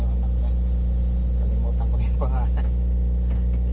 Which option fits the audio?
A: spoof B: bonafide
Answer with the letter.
B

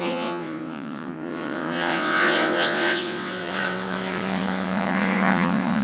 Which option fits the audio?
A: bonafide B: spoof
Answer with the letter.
B